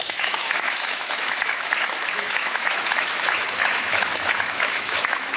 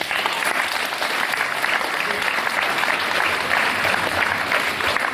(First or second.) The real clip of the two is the second